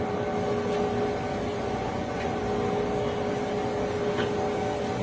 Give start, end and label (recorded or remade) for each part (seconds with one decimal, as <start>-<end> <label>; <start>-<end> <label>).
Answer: 0.0-1.5 recorded; 1.5-2.4 remade; 2.4-5.0 recorded